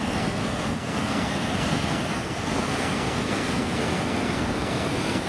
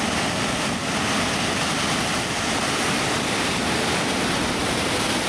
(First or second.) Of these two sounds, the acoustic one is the second